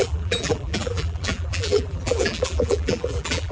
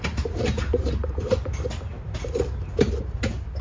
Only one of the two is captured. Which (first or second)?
second